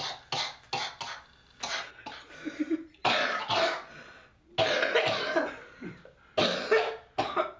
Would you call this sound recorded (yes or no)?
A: yes